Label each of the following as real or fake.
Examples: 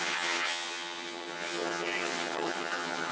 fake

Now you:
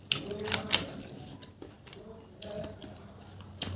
real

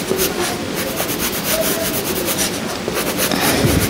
real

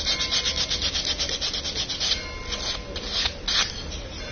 real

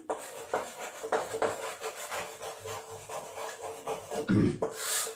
fake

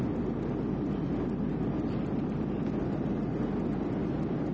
real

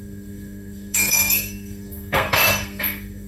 fake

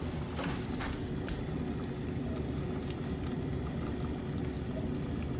real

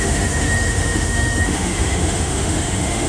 fake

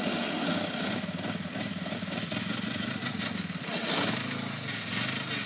real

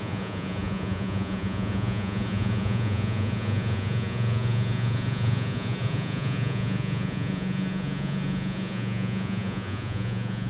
fake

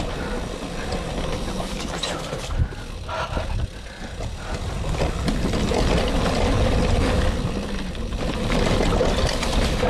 real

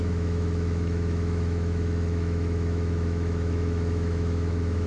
fake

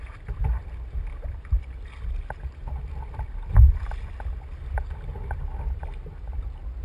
real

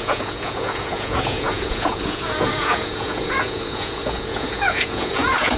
fake